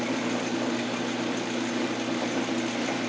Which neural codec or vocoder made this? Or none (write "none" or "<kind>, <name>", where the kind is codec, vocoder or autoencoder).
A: none